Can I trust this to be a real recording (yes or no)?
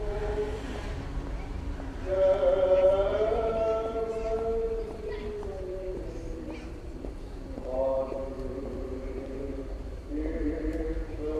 no